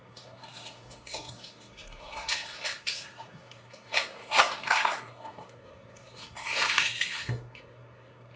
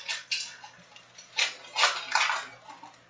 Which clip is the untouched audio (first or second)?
second